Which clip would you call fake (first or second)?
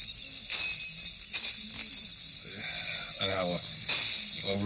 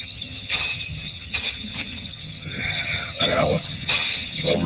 second